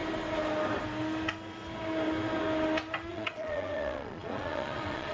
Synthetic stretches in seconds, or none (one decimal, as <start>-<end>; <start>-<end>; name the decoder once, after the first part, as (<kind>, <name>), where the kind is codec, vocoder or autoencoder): 3.1-5.1 (vocoder, Vocos)